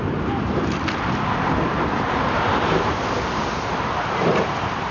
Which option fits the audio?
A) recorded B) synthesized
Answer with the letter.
B